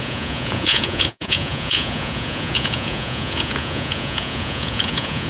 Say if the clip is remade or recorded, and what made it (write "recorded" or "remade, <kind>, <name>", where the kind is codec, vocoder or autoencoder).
remade, vocoder, Vocos